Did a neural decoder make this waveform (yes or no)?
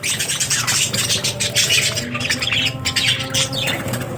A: no